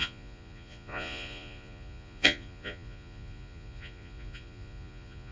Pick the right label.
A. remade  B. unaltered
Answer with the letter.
A